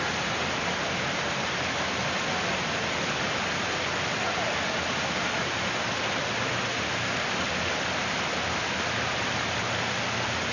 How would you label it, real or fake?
real